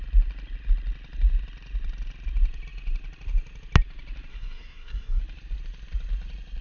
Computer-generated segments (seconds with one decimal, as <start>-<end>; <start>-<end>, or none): 4.3-5.2